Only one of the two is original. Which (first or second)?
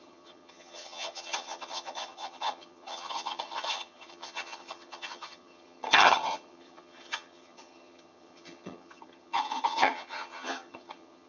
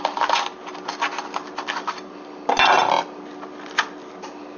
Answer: second